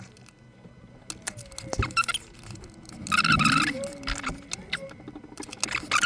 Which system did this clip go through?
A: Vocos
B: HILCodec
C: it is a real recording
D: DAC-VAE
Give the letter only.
C